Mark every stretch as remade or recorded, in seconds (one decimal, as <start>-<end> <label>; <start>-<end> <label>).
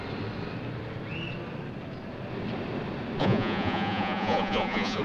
0.0-3.2 recorded; 3.2-5.0 remade